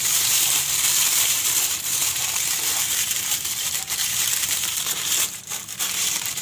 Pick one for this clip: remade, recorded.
remade